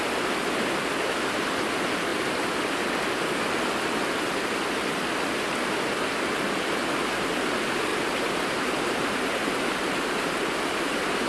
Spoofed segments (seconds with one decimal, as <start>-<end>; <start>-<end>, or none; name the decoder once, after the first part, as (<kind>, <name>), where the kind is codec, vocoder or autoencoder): 2.1-2.8 (vocoder, BigVGAN v2); 7.9-11.3